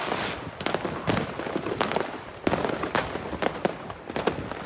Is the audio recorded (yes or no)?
yes